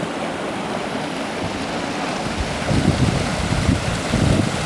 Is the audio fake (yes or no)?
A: no